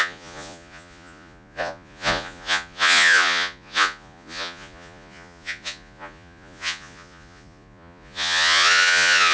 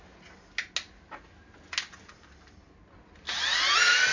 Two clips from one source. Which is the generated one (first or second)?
first